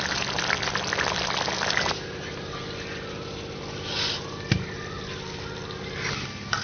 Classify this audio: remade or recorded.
recorded